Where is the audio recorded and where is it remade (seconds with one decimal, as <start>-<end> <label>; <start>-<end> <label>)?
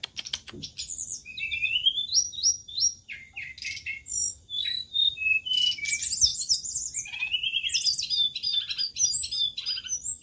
0.0-10.2 recorded